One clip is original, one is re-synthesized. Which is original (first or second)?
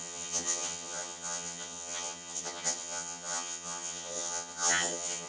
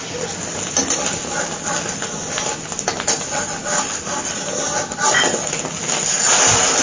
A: second